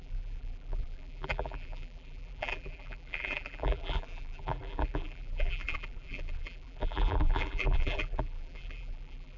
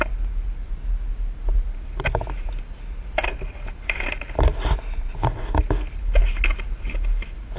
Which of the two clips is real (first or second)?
second